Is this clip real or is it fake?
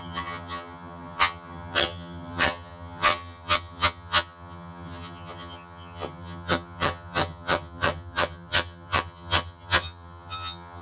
fake